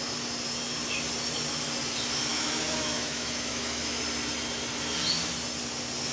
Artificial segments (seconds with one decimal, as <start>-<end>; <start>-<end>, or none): 2.3-4.0